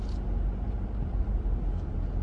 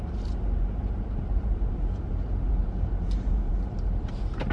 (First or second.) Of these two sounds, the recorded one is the first